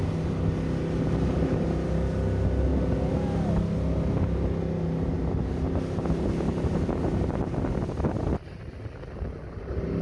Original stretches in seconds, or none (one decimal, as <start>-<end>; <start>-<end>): 0.0-10.0

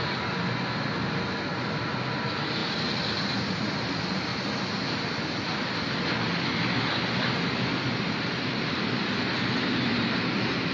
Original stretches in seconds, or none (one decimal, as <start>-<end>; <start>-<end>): 0.0-10.7